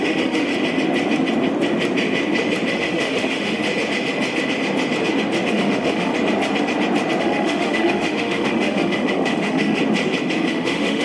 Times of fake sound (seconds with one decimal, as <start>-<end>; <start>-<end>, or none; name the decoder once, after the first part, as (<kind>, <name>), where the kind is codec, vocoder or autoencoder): 0.0-0.5 (autoencoder, DAC-VAE); 2.7-3.6; 5.5-6.1; 7.2-9.8; 10.5-11.0